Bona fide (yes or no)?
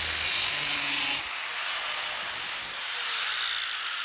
yes